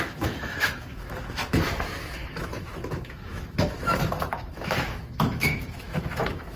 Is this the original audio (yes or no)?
no